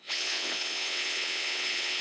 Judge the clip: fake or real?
fake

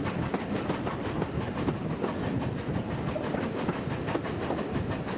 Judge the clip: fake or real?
real